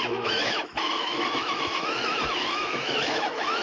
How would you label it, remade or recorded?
remade